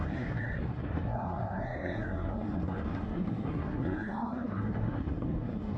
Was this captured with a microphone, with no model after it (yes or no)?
no